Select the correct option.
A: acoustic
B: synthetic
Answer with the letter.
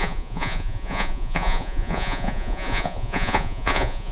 B